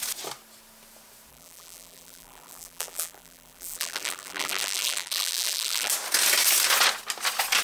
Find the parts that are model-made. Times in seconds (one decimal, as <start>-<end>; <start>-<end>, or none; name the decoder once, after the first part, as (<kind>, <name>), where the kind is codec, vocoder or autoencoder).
1.3-5.9 (vocoder, BigVGAN v2)